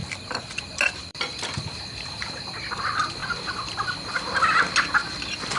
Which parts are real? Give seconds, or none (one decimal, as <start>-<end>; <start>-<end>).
0.6-1.1; 2.7-3.2; 4.1-5.6